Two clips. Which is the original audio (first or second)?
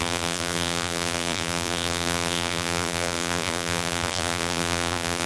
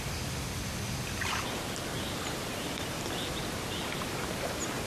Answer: second